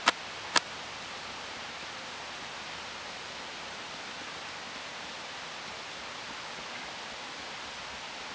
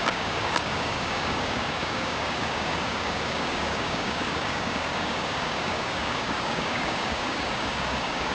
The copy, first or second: second